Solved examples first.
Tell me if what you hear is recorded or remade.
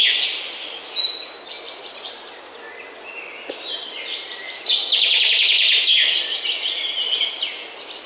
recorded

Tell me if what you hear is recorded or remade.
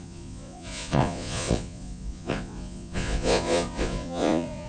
remade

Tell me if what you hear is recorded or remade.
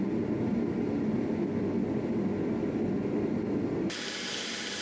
recorded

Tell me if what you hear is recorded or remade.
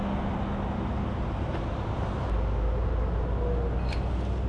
recorded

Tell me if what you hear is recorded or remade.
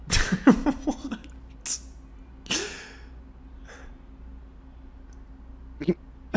recorded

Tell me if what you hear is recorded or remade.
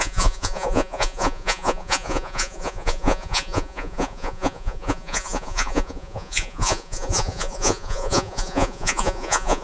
remade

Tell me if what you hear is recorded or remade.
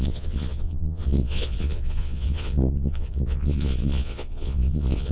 remade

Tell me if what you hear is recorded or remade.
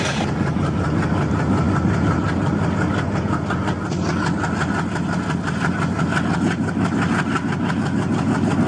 recorded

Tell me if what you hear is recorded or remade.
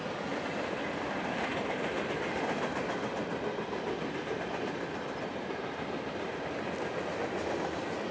recorded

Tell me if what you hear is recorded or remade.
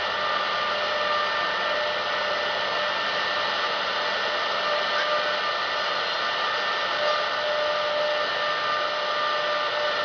recorded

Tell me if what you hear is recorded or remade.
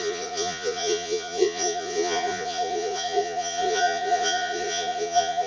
remade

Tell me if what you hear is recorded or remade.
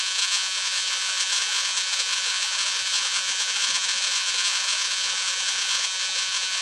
remade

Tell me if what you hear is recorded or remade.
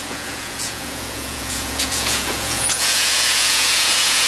remade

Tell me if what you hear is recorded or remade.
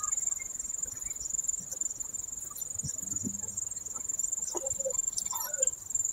recorded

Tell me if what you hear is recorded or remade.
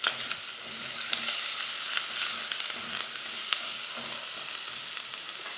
recorded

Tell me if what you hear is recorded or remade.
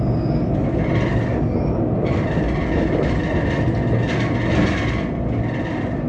recorded